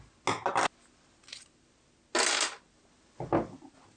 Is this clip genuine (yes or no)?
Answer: yes